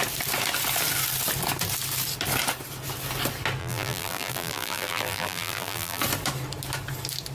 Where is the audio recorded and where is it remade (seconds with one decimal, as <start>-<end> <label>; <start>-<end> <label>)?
0.0-3.6 recorded; 3.6-6.0 remade; 6.0-7.3 recorded